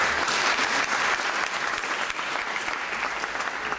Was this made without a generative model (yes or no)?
yes